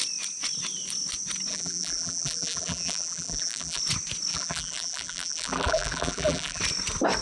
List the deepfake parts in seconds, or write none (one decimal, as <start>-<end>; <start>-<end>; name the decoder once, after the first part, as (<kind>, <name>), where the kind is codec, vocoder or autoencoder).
1.5-3.8 (vocoder, BigVGAN v2); 4.3-6.6

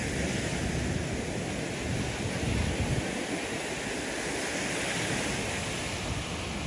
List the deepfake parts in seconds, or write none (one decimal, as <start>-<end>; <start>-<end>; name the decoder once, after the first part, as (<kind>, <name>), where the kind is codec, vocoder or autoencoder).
3.4-5.3 (vocoder, BigVGAN v2)

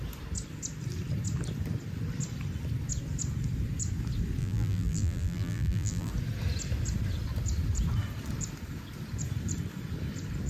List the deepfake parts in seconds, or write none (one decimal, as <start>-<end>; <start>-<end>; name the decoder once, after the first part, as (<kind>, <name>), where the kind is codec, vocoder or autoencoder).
4.4-6.1 (vocoder, BigVGAN v2)

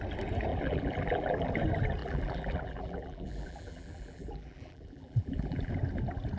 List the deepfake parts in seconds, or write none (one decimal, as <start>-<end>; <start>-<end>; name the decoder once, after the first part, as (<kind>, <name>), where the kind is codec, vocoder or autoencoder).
0.5-1.5 (vocoder, BigVGAN v2); 2.0-5.7

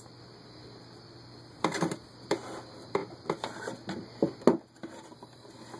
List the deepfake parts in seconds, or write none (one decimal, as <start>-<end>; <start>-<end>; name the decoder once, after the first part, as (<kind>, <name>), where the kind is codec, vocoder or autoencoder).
none

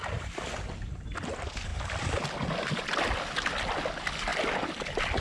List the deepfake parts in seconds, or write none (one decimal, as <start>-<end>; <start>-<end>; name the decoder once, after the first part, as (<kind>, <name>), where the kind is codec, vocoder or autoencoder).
0.0-0.5 (vocoder, BigVGAN v2); 1.7-2.9; 4.3-4.8

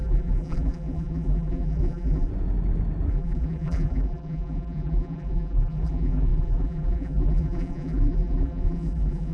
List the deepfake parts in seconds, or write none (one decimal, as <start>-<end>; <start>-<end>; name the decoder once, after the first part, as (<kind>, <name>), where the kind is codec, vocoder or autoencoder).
0.0-2.3 (vocoder, BigVGAN v2); 3.1-9.3

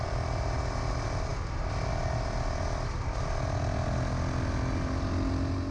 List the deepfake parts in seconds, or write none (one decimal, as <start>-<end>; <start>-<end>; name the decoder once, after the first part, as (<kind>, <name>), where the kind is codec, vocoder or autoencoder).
none